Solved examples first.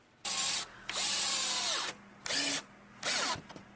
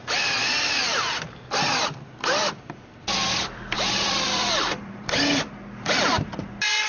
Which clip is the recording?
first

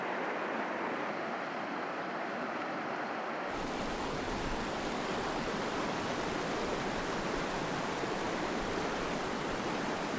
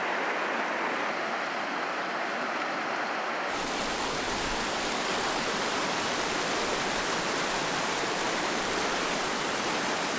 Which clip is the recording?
second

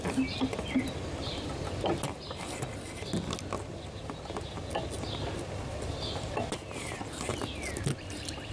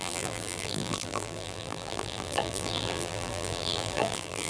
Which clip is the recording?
first